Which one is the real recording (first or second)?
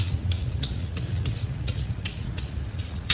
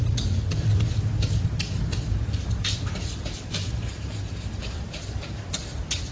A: second